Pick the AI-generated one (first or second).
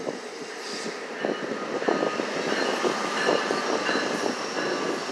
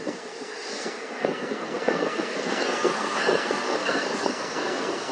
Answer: second